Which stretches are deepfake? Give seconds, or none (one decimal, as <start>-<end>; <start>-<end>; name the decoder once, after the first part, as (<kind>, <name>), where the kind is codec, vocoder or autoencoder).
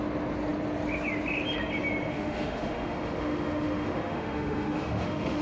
2.1-5.4 (autoencoder, DAC-VAE)